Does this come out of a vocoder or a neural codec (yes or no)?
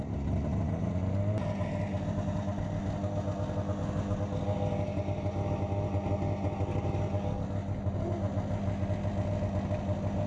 no